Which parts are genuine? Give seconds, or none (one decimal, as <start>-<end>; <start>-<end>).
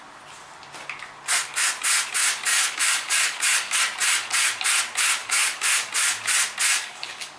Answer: 0.0-2.5; 3.8-5.2; 5.9-6.7